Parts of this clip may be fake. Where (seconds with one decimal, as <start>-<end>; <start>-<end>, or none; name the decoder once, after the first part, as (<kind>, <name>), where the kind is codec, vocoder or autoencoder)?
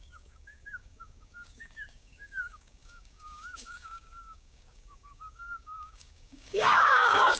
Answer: 0.0-7.4 (codec, DAC)